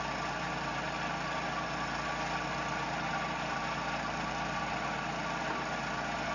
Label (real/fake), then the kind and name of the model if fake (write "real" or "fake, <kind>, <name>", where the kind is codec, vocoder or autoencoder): real